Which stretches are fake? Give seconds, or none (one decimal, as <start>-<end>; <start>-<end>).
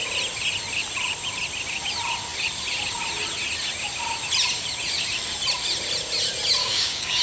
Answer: 6.6-7.2